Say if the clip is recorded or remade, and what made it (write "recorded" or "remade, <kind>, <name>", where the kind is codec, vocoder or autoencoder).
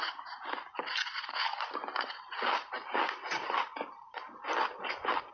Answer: recorded